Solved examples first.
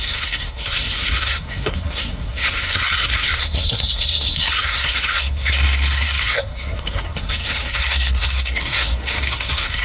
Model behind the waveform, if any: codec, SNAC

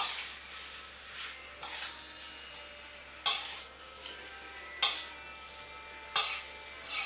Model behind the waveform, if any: none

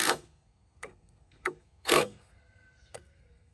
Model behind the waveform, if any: codec, SNAC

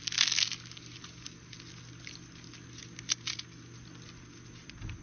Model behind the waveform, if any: none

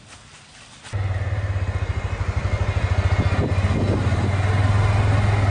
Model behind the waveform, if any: none